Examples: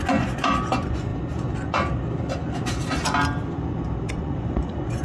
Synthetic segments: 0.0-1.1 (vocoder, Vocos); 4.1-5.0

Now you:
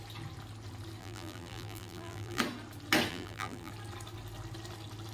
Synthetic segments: 1.0-2.4 (vocoder, BigVGAN v2); 3.1-3.7

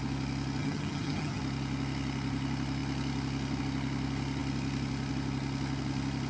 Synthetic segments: 0.6-1.4 (vocoder, HiFi-GAN)